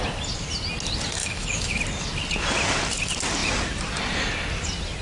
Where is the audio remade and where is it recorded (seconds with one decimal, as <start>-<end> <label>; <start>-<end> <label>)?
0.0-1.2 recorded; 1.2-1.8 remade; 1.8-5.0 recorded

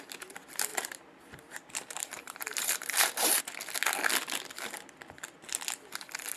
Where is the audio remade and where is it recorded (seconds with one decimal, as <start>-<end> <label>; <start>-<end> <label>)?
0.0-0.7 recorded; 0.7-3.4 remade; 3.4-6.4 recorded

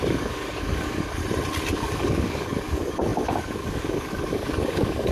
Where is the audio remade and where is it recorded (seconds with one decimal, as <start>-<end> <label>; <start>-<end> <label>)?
0.0-1.2 remade; 1.2-1.7 recorded; 1.7-5.1 remade